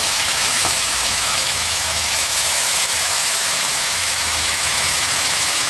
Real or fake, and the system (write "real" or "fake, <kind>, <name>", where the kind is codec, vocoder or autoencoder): fake, autoencoder, DAC-VAE